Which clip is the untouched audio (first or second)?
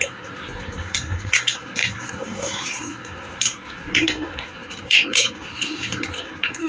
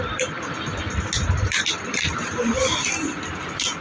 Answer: second